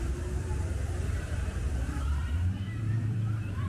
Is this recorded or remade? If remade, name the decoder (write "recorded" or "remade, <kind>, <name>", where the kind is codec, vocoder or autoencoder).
remade, vocoder, BigVGAN v2